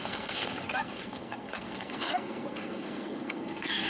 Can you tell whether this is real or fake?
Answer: fake